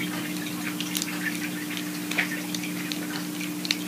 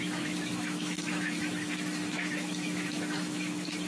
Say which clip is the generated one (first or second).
second